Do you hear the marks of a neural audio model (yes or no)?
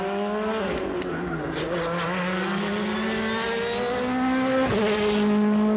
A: no